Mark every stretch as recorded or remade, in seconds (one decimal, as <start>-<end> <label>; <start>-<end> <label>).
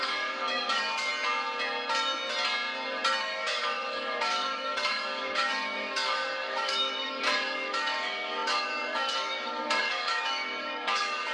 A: 0.0-1.1 remade; 1.1-3.2 recorded; 3.2-11.3 remade